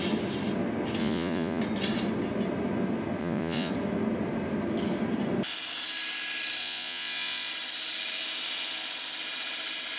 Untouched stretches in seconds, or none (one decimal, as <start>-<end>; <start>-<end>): 0.0-1.0; 1.6-3.2; 3.7-6.6; 7.5-10.0